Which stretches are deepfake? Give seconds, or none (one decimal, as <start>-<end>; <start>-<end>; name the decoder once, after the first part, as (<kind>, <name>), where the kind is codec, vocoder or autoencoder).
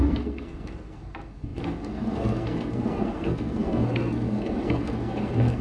0.0-5.6 (codec, SNAC)